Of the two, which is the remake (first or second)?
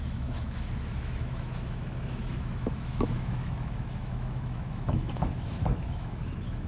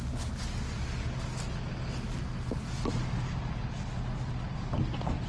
first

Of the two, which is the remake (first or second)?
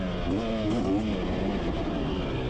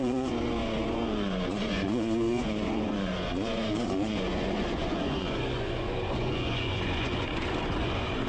second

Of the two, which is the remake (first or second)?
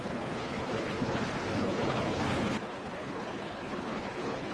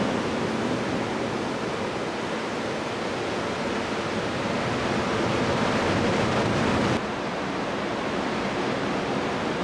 first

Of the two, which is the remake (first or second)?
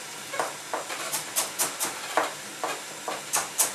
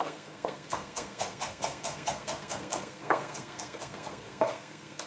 second